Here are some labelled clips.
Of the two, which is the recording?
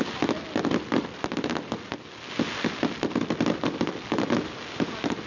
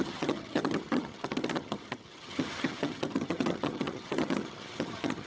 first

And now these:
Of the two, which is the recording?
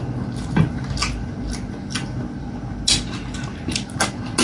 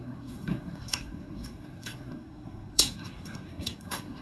first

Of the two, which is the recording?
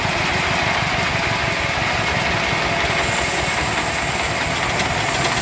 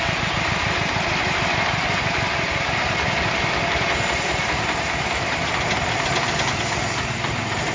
first